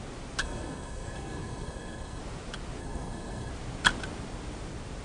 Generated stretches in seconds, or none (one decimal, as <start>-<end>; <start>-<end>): 0.4-2.2; 2.8-3.5